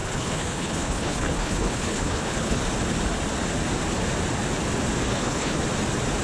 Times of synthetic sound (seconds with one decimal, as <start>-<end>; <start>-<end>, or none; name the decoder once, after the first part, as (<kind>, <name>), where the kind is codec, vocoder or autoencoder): 0.0-2.6 (codec, HILCodec); 5.1-5.6